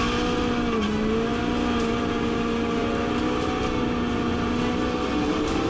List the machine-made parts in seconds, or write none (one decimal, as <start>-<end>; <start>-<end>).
none